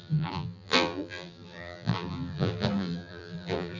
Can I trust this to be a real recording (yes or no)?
no